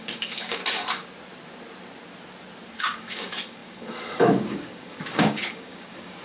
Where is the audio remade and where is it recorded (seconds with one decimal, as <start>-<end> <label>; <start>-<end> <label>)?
0.0-0.6 remade; 0.6-2.8 recorded; 2.8-6.2 remade